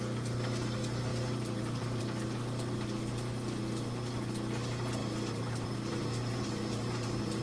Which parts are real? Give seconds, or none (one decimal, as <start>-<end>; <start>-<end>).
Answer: 0.0-1.1; 2.0-5.0